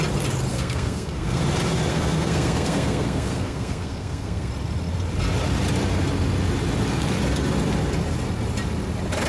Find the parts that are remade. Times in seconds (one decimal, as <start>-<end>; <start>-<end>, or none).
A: 0.5-1.4; 1.9-4.5